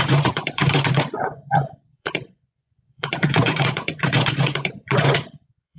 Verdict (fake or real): fake